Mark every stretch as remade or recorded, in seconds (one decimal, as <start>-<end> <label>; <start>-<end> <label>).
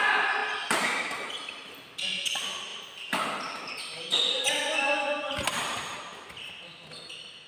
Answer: 0.0-2.7 recorded; 2.7-3.7 remade; 3.7-6.1 recorded; 6.1-7.5 remade